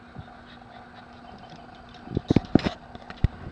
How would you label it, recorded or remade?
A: recorded